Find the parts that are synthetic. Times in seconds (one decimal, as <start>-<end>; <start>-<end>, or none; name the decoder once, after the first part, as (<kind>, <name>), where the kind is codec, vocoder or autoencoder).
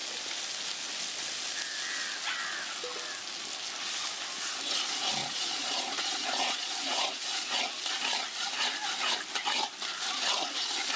5.2-7.6 (vocoder, Vocos)